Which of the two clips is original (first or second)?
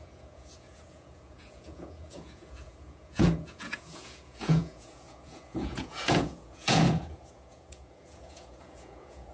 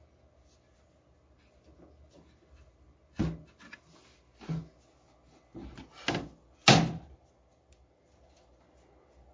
second